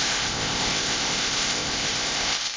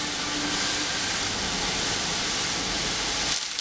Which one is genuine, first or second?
second